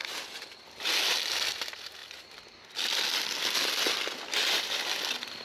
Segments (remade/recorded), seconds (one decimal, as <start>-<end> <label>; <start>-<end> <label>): 0.0-5.4 recorded